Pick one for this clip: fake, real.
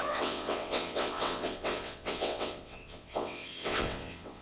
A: fake